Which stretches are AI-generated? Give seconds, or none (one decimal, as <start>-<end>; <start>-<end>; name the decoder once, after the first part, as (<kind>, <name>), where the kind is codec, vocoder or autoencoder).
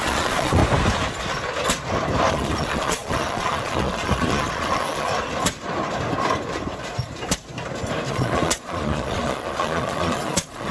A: 0.0-0.6 (vocoder, Vocos); 2.3-5.1; 8.1-10.7